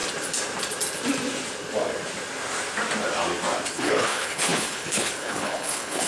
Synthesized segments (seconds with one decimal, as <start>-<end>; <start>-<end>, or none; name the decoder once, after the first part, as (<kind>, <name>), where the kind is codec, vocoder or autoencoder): 3.7-6.1 (codec, HILCodec)